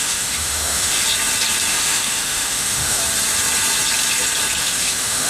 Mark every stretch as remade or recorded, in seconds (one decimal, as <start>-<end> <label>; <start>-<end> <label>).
0.0-1.0 remade; 1.0-1.7 recorded; 1.7-3.0 remade; 3.0-4.6 recorded; 4.6-5.3 remade